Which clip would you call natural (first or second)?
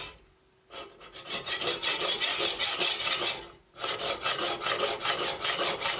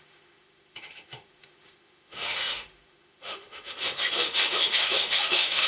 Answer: first